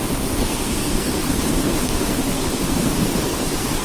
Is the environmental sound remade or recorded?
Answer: remade